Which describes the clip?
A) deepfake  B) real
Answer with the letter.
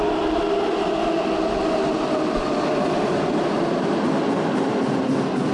B